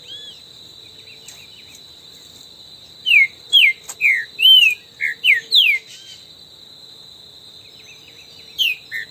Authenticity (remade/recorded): recorded